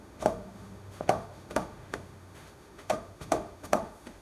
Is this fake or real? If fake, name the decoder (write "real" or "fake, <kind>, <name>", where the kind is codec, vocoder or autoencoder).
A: fake, autoencoder, DAC-VAE